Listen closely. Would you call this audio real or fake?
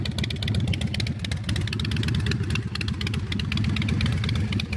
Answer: real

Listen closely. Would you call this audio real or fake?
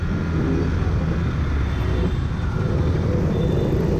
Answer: real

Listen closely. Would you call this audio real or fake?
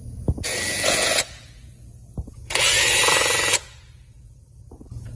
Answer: fake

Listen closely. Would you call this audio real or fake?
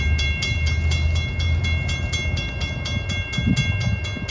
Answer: real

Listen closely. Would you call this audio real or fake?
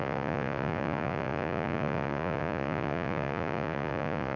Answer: fake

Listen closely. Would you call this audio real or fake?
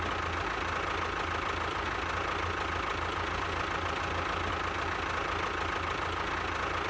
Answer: real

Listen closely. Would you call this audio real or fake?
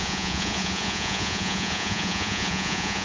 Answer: fake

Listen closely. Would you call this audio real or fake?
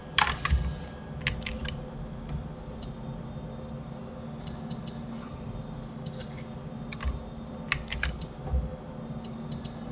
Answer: real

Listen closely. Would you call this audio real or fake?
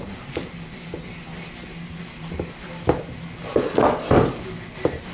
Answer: real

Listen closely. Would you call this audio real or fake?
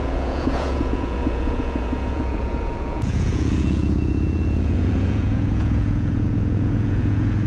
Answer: fake